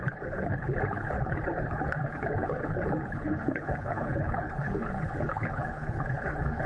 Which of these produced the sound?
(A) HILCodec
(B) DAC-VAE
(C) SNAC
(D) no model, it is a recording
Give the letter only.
A